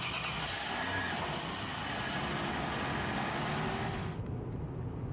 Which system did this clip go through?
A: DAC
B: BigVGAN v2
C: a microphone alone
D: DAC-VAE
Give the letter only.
C